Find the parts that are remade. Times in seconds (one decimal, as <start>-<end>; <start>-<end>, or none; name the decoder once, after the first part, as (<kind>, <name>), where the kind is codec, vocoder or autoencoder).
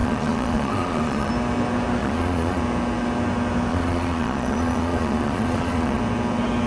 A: 0.0-1.3 (vocoder, Vocos); 2.0-2.6; 3.7-6.0